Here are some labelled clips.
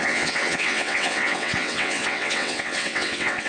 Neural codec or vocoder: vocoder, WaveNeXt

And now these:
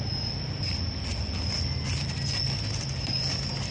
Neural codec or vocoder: none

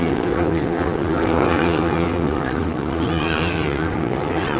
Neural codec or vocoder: vocoder, WaveNeXt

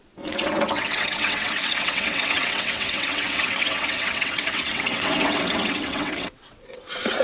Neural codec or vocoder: vocoder, WaveNeXt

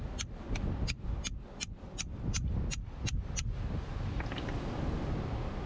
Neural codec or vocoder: none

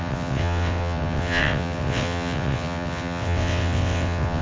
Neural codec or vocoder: vocoder, WaveNeXt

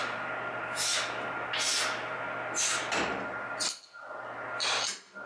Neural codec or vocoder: none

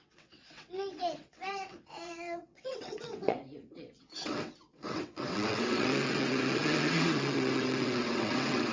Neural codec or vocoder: vocoder, WaveNeXt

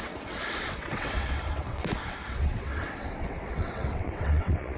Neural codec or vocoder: vocoder, WaveNeXt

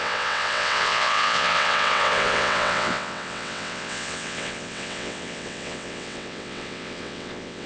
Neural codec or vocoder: vocoder, WaveNeXt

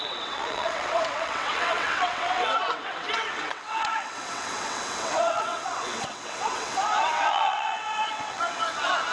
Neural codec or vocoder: vocoder, WaveNeXt